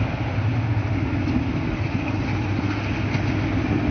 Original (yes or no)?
yes